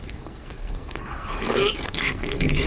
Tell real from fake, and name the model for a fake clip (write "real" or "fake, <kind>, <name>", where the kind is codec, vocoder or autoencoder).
fake, codec, SNAC